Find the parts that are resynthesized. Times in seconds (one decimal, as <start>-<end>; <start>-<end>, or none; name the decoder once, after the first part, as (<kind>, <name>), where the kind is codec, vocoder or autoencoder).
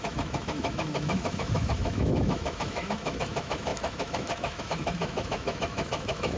0.0-6.4 (autoencoder, DAC-VAE)